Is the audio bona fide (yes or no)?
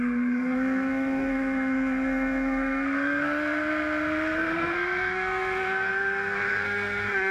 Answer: no